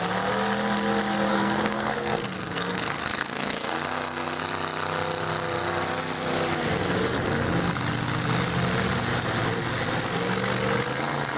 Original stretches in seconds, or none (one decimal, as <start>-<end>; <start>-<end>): 0.0-1.3; 4.4-11.4